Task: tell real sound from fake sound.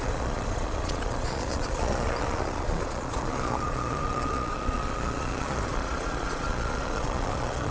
fake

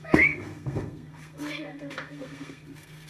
fake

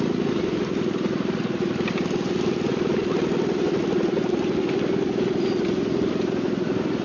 real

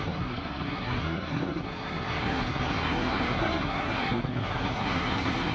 fake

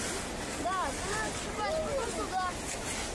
real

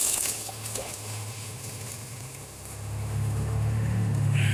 fake